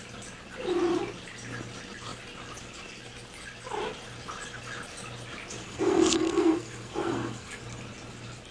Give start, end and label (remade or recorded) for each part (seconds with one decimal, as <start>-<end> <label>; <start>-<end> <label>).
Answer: 0.0-5.6 recorded; 5.6-7.6 remade; 7.6-8.5 recorded